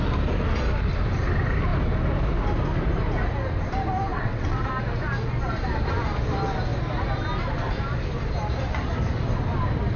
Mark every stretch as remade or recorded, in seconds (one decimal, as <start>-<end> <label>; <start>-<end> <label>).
0.0-4.1 recorded; 4.1-4.7 remade; 4.7-10.0 recorded